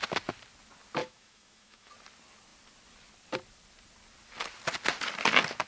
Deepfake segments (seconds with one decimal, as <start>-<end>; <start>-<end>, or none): 1.0-1.9